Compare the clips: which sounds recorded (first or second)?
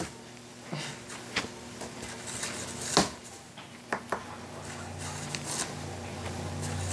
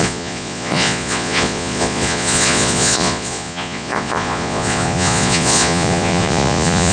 first